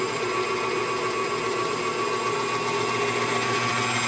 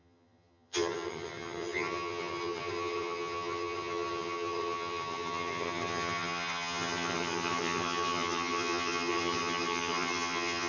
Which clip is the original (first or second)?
first